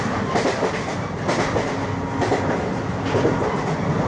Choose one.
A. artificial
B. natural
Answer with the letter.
B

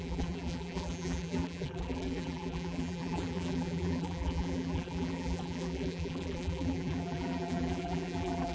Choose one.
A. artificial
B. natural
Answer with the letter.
A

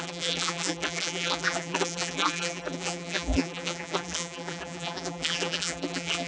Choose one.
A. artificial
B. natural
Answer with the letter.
A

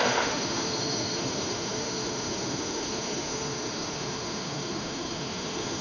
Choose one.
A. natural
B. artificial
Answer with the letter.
B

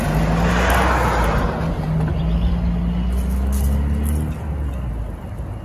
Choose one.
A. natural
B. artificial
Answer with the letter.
A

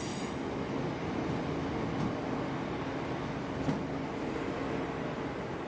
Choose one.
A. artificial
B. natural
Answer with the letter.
B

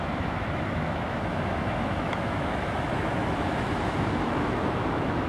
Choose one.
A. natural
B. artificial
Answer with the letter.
B